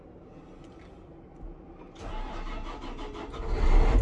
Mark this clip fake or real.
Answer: real